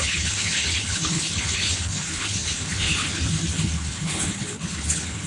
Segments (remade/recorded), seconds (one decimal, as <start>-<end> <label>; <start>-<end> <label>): 0.0-5.3 remade